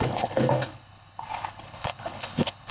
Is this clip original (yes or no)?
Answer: no